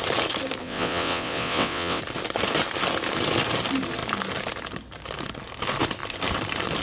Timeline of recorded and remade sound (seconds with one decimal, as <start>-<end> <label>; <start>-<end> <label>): 0.0-0.6 recorded; 0.6-2.0 remade; 2.0-6.8 recorded